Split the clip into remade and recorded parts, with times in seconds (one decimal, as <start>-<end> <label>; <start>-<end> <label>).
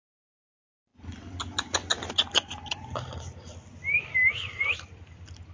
0.0-5.5 recorded